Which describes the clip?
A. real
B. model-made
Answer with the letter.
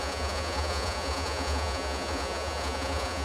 B